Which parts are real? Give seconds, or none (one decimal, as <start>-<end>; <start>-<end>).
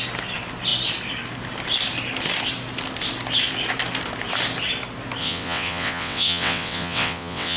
0.0-5.2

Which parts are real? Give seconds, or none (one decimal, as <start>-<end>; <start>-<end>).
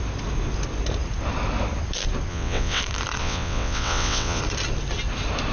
0.0-2.3; 2.8-3.2; 4.4-5.5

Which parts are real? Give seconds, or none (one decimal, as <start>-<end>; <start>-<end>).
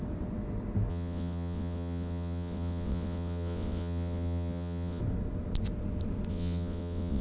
0.0-0.9; 5.0-6.3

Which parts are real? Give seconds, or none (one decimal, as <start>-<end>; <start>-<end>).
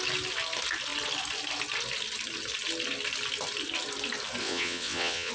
0.0-4.4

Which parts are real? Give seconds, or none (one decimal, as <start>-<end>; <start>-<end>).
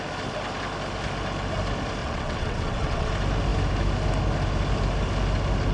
0.0-2.0; 3.1-5.7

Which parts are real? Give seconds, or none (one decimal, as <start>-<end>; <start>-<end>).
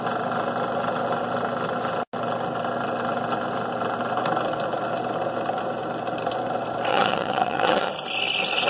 0.0-6.9; 7.9-8.7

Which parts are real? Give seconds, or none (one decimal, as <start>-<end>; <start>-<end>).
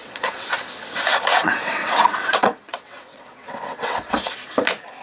0.5-1.3; 4.3-5.0